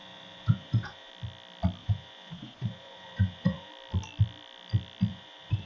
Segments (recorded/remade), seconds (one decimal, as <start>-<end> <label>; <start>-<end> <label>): 0.0-1.1 remade; 1.1-1.8 recorded; 1.8-3.7 remade; 3.7-5.1 recorded; 5.1-5.7 remade